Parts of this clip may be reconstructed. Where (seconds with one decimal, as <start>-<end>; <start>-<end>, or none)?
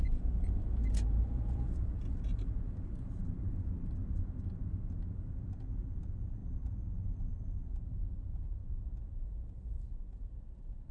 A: 0.0-6.4; 7.3-10.9